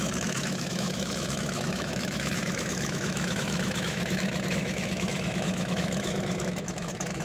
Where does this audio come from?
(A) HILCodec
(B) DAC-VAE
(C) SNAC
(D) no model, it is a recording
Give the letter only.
B